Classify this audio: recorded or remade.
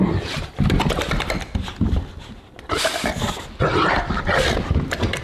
recorded